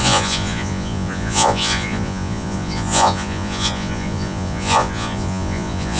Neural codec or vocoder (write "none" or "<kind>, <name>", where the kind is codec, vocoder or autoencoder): vocoder, Vocos